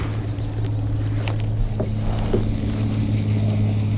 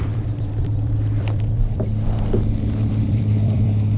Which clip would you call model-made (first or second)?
second